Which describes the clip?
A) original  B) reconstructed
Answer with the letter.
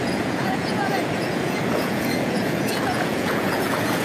B